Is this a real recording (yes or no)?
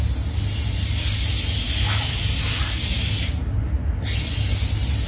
yes